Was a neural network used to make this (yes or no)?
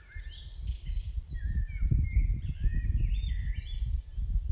no